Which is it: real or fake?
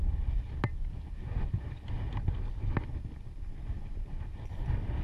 real